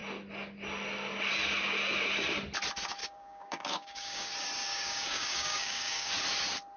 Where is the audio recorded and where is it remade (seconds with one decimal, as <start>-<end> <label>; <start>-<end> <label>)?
0.0-3.0 recorded; 3.0-4.3 remade; 4.3-4.7 recorded; 4.7-6.1 remade; 6.1-6.8 recorded